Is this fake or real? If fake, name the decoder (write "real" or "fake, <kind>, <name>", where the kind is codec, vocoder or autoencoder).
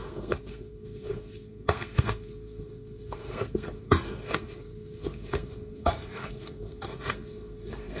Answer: fake, codec, SNAC